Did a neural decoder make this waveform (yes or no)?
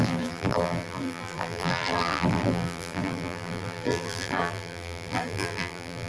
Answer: yes